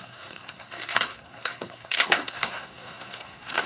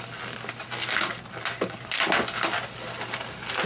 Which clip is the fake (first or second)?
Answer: first